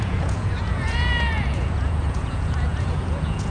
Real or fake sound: fake